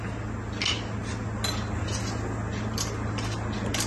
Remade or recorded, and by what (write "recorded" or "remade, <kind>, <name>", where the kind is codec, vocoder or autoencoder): recorded